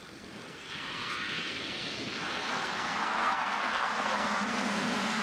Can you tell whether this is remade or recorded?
remade